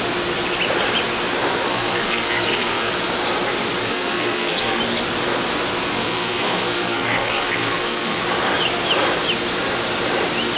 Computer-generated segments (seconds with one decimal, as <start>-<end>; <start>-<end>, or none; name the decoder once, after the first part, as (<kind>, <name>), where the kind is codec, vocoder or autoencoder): 1.7-2.9 (codec, SNAC); 3.8-4.8; 5.9-8.2